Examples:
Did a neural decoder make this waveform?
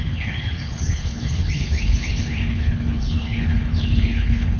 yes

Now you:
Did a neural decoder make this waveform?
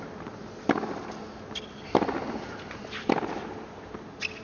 no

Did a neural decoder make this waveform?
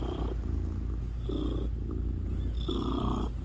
no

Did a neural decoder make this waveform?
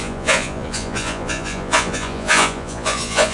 yes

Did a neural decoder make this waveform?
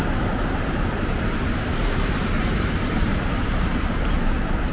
yes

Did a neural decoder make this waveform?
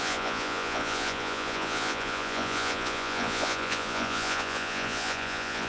yes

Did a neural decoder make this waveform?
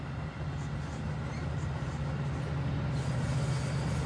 no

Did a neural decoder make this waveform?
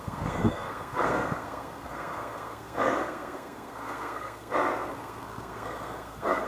yes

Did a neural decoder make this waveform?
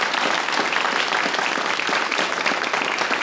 no